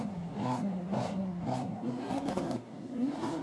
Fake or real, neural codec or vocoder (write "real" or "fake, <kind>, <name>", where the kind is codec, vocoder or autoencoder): fake, codec, SNAC